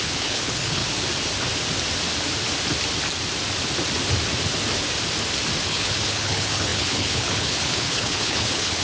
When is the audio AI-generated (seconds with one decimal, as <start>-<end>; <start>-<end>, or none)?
0.0-0.8; 5.6-8.8